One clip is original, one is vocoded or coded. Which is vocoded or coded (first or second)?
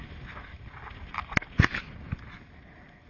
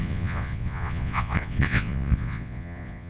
second